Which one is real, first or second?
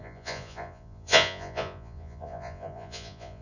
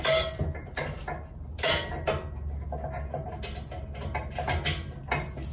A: second